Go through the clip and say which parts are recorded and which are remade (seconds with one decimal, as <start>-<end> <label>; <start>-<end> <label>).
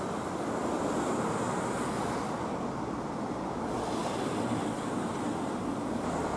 0.0-4.0 recorded; 4.0-4.6 remade; 4.6-6.4 recorded